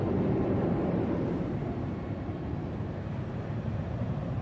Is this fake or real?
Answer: fake